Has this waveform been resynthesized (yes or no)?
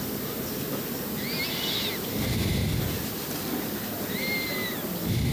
no